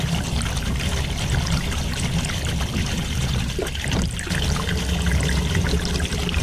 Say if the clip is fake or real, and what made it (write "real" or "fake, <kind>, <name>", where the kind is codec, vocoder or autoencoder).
real